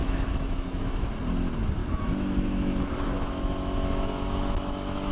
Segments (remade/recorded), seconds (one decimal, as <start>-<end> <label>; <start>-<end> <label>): 0.0-1.1 remade; 1.1-1.8 recorded; 1.8-5.1 remade